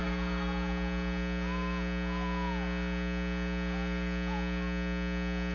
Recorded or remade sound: recorded